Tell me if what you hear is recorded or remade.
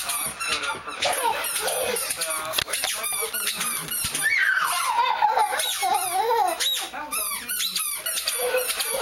recorded